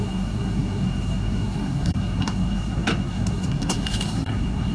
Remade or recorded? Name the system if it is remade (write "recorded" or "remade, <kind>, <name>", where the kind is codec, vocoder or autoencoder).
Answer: remade, codec, SNAC